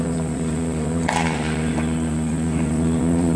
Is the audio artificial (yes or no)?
yes